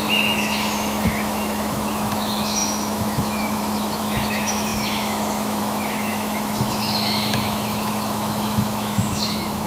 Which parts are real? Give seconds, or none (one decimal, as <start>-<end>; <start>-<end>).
none